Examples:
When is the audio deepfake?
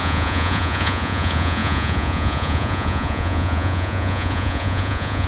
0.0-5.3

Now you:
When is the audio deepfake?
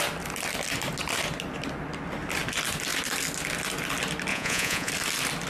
4.3-4.9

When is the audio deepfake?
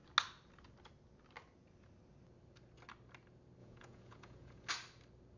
3.6-4.7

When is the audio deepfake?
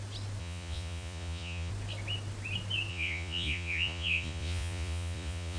0.4-1.7; 2.9-5.6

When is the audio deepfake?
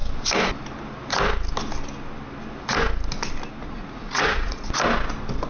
3.6-4.7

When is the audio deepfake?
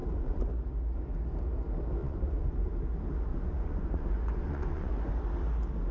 0.0-0.5; 2.0-2.7; 3.3-5.3